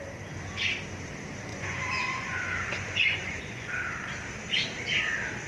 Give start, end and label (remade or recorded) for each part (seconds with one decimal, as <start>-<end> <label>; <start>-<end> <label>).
0.0-1.5 recorded; 1.5-3.7 remade; 3.7-5.5 recorded